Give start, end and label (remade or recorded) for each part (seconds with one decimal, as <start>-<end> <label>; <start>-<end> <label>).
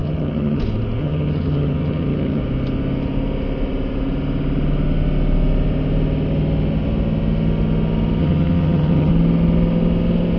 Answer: 0.0-0.6 remade; 0.6-1.0 recorded; 1.0-2.4 remade; 2.4-8.2 recorded; 8.2-9.1 remade; 9.1-10.4 recorded